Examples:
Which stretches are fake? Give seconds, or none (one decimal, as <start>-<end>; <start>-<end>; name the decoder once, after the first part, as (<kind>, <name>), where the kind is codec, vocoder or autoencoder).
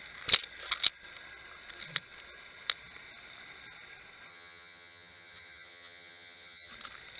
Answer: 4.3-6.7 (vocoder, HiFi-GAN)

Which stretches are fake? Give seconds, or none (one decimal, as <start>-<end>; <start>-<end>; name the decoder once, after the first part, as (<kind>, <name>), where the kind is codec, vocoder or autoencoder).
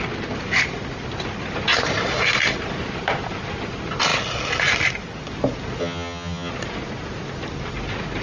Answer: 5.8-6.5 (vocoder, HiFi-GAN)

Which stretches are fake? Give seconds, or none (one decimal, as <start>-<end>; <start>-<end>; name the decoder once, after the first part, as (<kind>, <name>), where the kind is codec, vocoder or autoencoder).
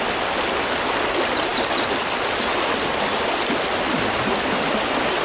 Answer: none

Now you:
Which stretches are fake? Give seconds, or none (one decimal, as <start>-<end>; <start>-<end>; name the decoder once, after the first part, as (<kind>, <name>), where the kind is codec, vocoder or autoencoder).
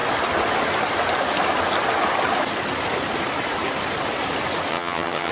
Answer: 4.7-5.3 (vocoder, HiFi-GAN)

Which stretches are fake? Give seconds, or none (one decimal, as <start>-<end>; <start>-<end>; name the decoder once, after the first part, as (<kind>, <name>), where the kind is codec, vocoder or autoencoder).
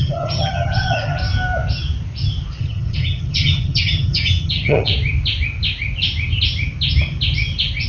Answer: 0.0-1.2 (vocoder, HiFi-GAN); 2.6-4.9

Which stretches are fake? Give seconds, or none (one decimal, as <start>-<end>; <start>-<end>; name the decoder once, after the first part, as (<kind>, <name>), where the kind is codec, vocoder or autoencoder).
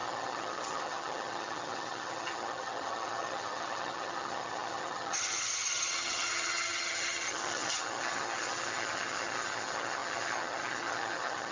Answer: 0.0-11.5 (vocoder, HiFi-GAN)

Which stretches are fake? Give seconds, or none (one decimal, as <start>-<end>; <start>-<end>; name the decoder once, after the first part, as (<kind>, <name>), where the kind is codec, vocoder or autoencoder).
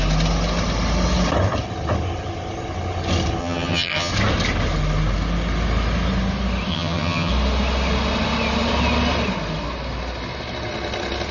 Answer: 3.4-4.1 (vocoder, HiFi-GAN); 6.7-7.3